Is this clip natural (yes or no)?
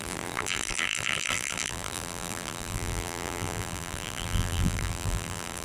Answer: no